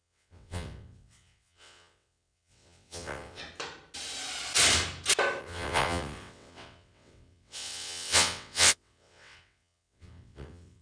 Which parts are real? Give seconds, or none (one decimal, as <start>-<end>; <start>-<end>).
3.4-5.4